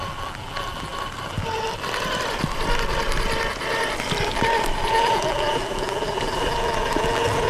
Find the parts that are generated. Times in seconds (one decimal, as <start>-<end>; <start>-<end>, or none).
0.0-0.9; 4.9-7.5